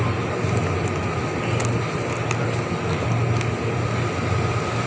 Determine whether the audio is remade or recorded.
recorded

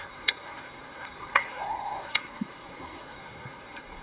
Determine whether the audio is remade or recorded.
remade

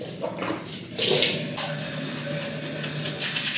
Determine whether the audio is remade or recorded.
recorded